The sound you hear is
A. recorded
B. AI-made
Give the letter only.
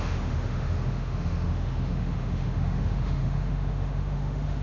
B